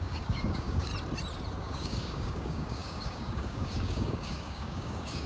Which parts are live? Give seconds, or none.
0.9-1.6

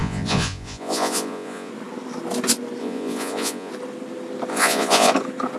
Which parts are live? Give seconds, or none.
1.7-2.8; 3.7-4.5; 5.1-5.6

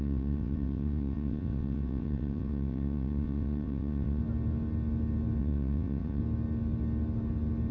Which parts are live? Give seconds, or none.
4.2-5.4; 6.2-7.7

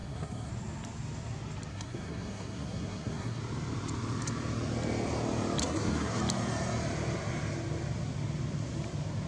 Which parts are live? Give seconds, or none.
0.5-1.7; 3.4-5.6; 6.2-9.3

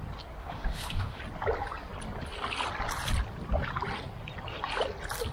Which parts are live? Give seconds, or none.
0.0-0.4; 1.2-5.3

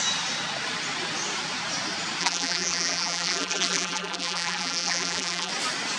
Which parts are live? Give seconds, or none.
0.0-2.2; 5.5-6.0

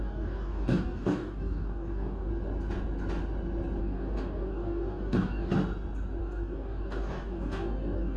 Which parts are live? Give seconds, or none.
2.3-3.8; 5.5-6.2

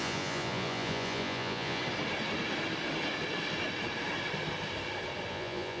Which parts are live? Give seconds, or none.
1.8-5.3